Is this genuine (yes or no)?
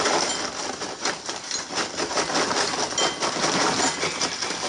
yes